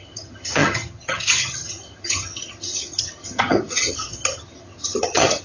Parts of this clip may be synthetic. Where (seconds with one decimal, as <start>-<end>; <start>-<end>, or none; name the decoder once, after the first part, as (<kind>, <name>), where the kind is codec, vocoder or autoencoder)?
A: 0.0-5.4 (vocoder, HiFi-GAN)